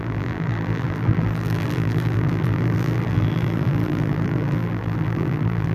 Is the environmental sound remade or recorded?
remade